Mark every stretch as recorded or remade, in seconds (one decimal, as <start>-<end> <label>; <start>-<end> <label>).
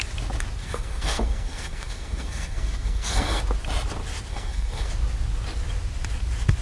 0.0-0.6 recorded; 0.6-3.4 remade; 3.4-4.3 recorded; 4.3-4.9 remade; 4.9-6.6 recorded